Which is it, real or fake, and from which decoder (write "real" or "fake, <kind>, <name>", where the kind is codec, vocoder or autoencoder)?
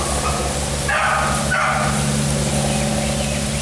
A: real